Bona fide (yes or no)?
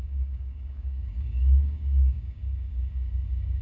no